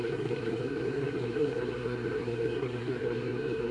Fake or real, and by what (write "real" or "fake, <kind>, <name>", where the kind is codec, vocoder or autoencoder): fake, codec, SNAC